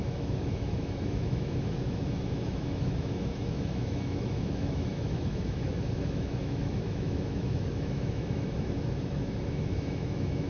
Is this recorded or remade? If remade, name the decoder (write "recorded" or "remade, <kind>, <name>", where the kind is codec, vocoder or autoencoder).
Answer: remade, autoencoder, DAC-VAE